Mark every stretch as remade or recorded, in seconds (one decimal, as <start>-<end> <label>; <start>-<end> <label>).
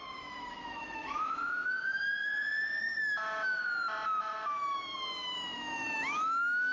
0.0-2.3 remade; 2.3-2.8 recorded; 2.8-3.6 remade; 3.6-4.2 recorded; 4.2-6.7 remade